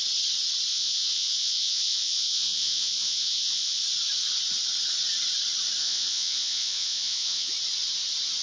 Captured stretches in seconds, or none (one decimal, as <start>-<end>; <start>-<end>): 0.0-0.7; 3.8-5.8; 7.5-8.4